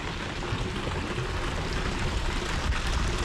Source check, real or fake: real